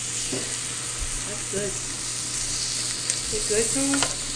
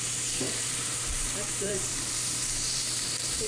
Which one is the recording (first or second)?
first